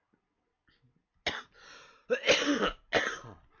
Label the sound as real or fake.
real